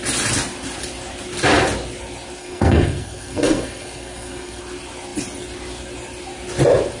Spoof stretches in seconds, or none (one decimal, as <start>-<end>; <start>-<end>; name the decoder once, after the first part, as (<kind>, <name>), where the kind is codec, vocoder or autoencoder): 2.4-4.6 (codec, SNAC)